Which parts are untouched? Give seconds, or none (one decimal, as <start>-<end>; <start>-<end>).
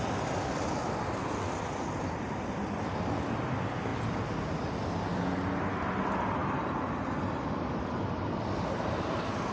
0.0-9.5